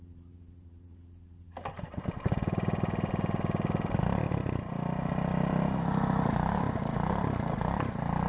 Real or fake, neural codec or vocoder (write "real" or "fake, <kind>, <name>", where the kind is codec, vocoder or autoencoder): fake, vocoder, BigVGAN v2